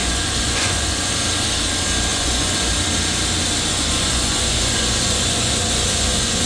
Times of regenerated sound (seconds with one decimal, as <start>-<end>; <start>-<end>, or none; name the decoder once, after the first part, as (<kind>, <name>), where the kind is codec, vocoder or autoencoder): 0.0-1.1 (vocoder, Vocos); 2.1-2.7; 3.7-6.5